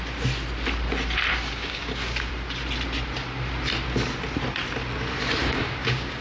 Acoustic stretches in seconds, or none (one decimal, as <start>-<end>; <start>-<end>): 0.0-1.3; 2.3-5.4